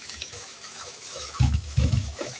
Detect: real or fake fake